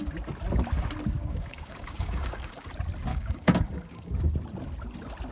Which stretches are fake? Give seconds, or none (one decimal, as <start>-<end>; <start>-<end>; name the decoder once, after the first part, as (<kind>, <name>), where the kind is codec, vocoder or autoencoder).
1.2-2.7 (codec, DAC); 3.1-4.2